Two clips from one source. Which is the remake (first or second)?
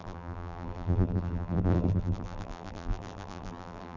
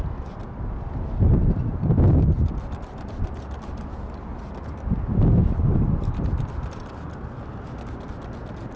first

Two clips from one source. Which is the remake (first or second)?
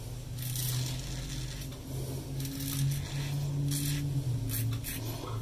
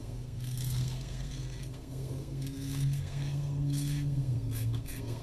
second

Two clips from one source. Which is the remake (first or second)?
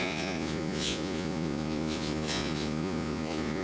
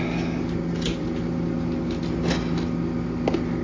first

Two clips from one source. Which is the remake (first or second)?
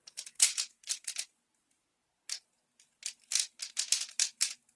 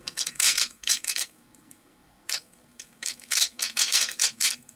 second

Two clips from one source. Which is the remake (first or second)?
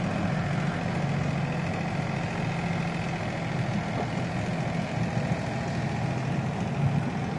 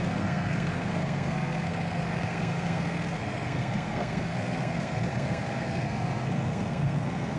second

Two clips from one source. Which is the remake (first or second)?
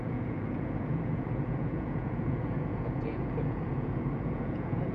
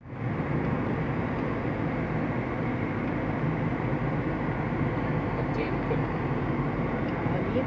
first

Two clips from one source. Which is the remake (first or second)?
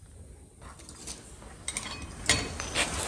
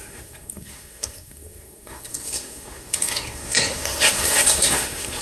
second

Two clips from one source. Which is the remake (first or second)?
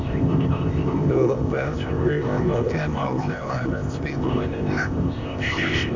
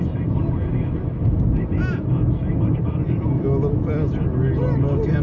first